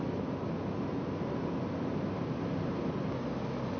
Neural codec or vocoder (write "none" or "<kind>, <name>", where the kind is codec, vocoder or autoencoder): none